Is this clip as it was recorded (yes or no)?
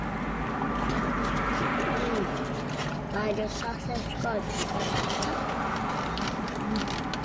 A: yes